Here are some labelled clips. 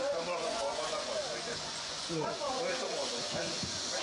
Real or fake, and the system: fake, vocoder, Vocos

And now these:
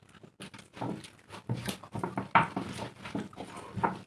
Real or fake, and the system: real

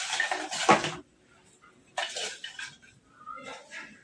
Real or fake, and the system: real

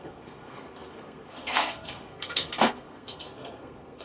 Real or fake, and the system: fake, codec, SNAC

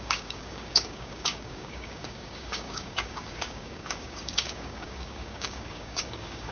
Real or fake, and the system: fake, codec, DAC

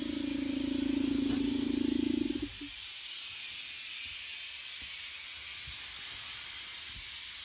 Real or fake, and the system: real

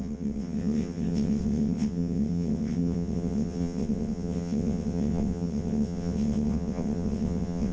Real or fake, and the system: fake, vocoder, WaveNeXt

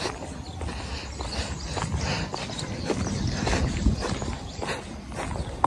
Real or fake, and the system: real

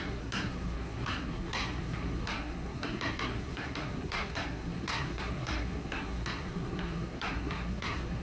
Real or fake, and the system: fake, codec, SNAC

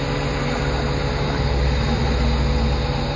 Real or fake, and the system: real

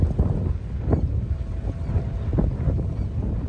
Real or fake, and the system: real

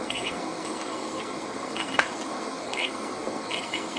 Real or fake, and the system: fake, codec, SNAC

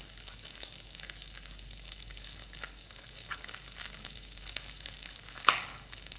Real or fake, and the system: fake, codec, DAC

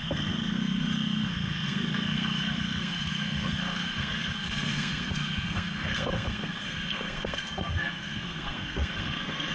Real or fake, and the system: fake, codec, SNAC